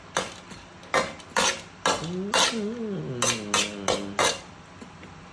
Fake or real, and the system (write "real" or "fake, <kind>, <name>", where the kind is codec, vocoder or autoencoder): real